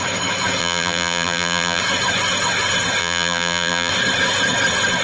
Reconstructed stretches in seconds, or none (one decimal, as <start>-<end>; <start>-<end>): 0.6-1.8; 3.0-3.9

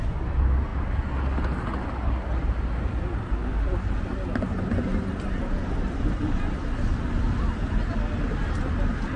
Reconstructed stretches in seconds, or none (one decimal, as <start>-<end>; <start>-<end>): none

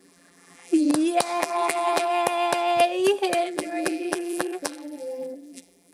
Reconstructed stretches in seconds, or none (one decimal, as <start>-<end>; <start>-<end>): 0.0-0.9; 1.4-2.1; 3.4-5.9

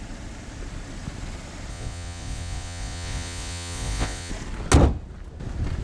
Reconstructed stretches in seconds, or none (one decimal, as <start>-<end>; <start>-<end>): 1.7-4.3

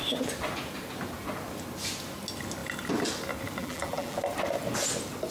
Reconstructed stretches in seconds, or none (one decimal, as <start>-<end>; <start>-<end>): 3.6-4.2

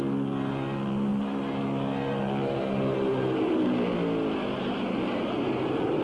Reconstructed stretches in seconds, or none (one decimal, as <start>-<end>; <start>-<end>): none